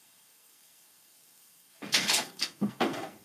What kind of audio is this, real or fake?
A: fake